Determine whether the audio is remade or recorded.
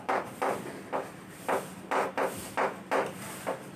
remade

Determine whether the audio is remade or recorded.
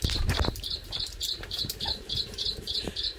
remade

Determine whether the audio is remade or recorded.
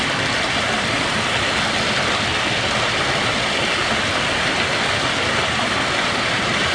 recorded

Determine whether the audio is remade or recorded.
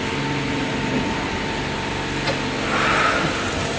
recorded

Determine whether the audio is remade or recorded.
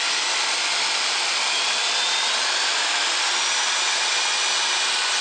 recorded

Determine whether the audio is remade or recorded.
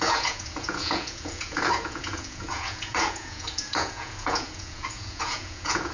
remade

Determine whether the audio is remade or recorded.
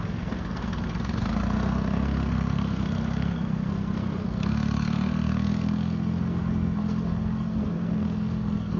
remade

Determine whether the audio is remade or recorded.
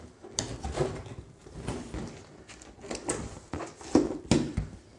recorded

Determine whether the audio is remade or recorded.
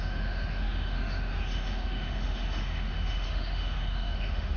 remade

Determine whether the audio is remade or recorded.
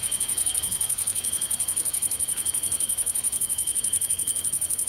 remade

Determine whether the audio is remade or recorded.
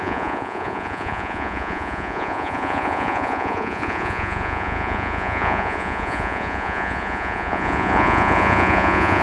remade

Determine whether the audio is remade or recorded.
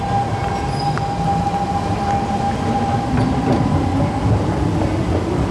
recorded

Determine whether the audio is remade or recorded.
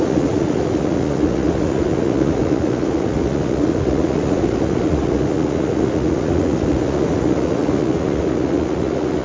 remade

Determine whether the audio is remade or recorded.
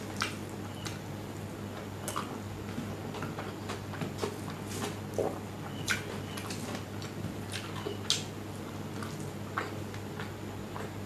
recorded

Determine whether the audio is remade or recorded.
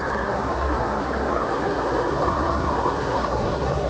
remade